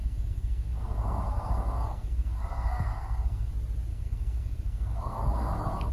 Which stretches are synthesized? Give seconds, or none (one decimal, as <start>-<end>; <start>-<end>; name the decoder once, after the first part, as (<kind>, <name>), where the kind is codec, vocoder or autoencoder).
0.0-3.5 (codec, SNAC); 3.9-5.9